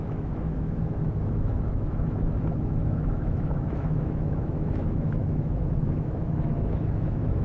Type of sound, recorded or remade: remade